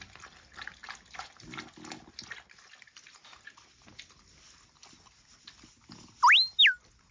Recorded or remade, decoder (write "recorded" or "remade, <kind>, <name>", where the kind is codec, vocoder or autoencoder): recorded